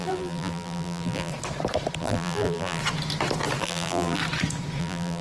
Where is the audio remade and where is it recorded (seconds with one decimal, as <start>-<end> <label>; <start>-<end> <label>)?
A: 0.0-1.3 remade; 1.3-2.0 recorded; 2.0-2.8 remade; 2.8-3.6 recorded; 3.6-4.2 remade; 4.2-4.8 recorded; 4.8-5.2 remade